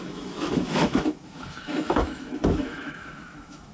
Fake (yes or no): yes